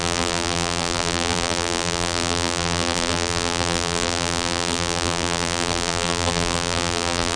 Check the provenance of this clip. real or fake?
fake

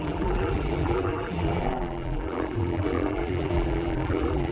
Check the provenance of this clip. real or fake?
fake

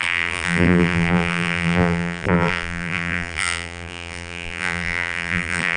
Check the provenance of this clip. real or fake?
fake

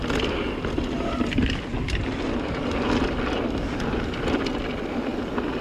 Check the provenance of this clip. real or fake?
real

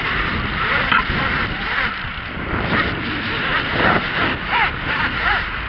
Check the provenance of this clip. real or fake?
fake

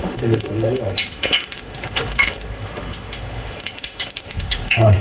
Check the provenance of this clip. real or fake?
fake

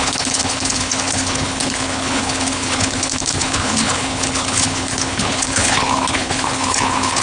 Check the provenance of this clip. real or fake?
fake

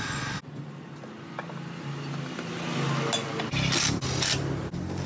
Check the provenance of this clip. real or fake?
real